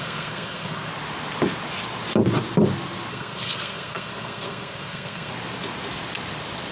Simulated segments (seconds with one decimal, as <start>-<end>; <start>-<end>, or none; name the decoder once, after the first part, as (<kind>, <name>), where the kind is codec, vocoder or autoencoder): 0.0-0.9 (codec, SNAC); 3.1-5.3

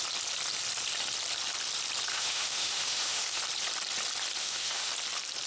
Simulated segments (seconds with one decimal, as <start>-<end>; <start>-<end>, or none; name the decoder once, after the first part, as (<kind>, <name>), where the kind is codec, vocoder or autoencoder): 2.1-3.4 (autoencoder, DAC-VAE); 4.4-4.9